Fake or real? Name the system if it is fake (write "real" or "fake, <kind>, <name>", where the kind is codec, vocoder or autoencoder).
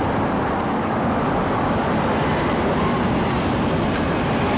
real